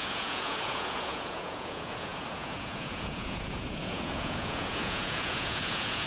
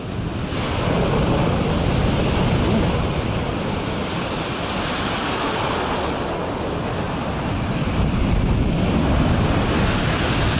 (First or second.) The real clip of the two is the second